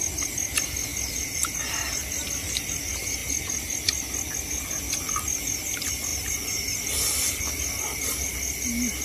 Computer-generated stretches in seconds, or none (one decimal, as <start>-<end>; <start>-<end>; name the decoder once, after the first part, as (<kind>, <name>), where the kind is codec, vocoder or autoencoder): 0.9-1.6 (vocoder, BigVGAN v2)